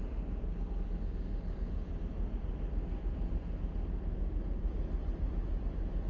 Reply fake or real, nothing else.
real